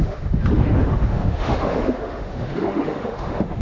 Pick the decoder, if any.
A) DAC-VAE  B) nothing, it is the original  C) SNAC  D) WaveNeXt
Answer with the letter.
A